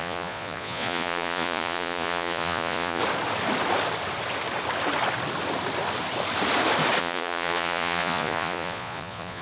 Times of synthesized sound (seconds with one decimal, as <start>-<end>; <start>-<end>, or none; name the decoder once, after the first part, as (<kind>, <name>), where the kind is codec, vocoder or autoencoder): 0.0-3.0 (vocoder, Vocos); 7.0-9.4

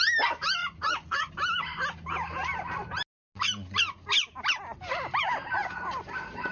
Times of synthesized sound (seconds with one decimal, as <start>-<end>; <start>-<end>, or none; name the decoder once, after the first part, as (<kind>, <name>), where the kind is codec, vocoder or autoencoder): 0.6-1.3 (vocoder, Vocos)

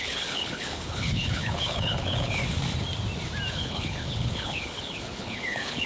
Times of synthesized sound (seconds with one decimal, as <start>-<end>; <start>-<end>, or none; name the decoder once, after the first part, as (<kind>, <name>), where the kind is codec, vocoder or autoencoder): 0.0-2.4 (codec, HILCodec); 3.5-5.9

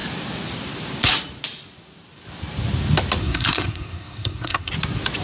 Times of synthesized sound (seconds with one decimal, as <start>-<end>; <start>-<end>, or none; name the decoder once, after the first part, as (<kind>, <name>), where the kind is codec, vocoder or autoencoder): 3.2-4.7 (codec, SNAC)

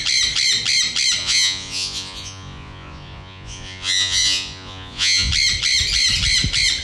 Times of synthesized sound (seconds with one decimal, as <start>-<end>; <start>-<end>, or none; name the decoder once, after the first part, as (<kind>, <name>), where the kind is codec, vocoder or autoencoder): 1.2-5.3 (vocoder, Vocos)